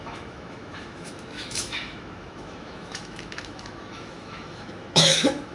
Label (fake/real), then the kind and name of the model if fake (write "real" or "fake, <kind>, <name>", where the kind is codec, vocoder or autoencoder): fake, autoencoder, DAC-VAE